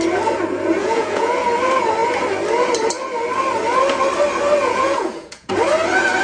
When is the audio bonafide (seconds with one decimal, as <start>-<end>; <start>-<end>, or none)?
0.0-0.8; 1.3-4.6; 5.5-6.2